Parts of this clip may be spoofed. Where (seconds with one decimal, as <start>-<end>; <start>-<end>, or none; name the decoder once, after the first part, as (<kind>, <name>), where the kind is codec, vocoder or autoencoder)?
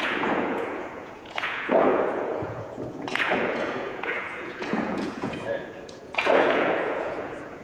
0.0-7.6 (vocoder, Vocos)